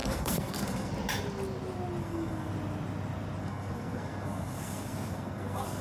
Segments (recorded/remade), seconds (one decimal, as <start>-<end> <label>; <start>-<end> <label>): 0.0-0.9 remade; 0.9-2.0 recorded; 2.0-2.5 remade; 2.5-3.4 recorded; 3.4-5.8 remade

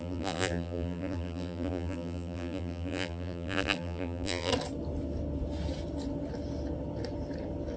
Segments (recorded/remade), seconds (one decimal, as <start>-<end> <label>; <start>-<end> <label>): 0.0-4.5 remade; 4.5-7.8 recorded

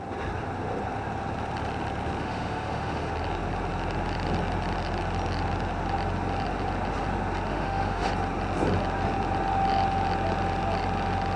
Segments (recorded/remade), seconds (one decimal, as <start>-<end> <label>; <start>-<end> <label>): 0.0-2.2 recorded; 2.2-3.1 remade; 3.1-7.5 recorded; 7.5-8.1 remade; 8.1-11.4 recorded

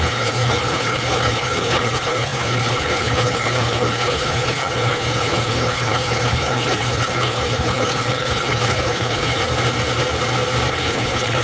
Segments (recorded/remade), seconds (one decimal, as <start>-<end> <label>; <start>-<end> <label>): 0.0-9.4 remade; 9.4-10.7 recorded; 10.7-11.4 remade